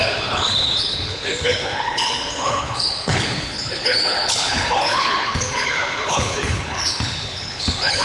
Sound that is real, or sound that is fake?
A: fake